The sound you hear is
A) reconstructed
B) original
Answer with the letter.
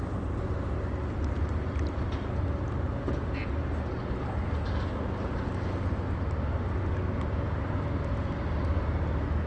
B